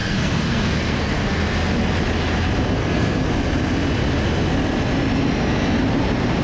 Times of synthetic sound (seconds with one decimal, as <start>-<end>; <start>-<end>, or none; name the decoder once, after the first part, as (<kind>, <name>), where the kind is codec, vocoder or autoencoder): 0.0-1.4 (codec, SNAC); 2.8-3.3

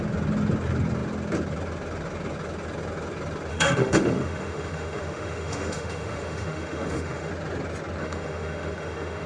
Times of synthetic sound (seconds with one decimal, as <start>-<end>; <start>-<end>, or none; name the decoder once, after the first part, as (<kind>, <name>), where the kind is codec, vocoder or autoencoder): 3.5-7.3 (autoencoder, DAC-VAE); 8.0-9.3